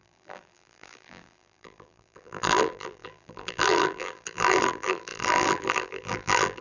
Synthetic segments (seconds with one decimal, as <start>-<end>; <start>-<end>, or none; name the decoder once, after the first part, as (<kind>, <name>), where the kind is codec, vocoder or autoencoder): 0.0-6.6 (vocoder, BigVGAN v2)